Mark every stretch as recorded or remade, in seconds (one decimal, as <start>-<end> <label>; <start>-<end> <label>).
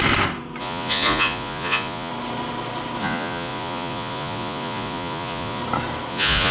0.0-0.6 recorded; 0.6-2.1 remade; 2.1-3.0 recorded; 3.0-5.6 remade; 5.6-6.1 recorded; 6.1-6.5 remade